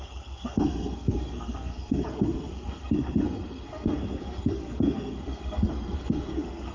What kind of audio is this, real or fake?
fake